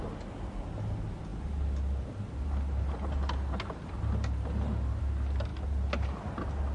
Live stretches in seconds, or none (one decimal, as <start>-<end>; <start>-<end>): 0.0-1.3; 5.0-5.5; 6.2-6.7